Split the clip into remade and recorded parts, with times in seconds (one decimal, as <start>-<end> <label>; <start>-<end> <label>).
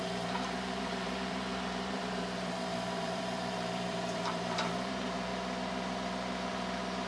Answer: 0.0-5.3 remade; 5.3-7.1 recorded